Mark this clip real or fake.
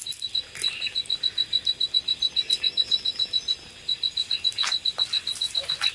real